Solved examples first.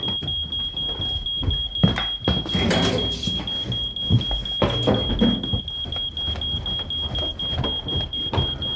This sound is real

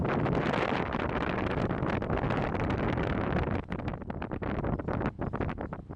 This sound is real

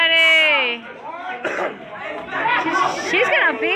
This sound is real